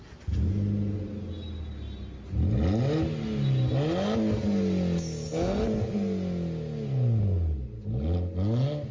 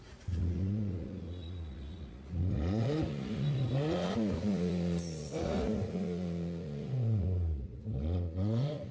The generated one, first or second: second